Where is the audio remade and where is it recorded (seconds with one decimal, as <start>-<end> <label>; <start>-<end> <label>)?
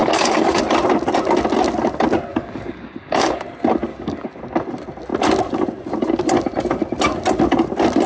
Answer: 0.0-0.6 remade; 0.6-2.3 recorded; 2.3-3.4 remade; 3.4-3.9 recorded; 3.9-4.4 remade; 4.4-8.1 recorded